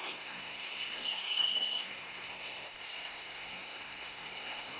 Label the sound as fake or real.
fake